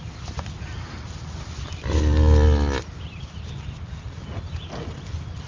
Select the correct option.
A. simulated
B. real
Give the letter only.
B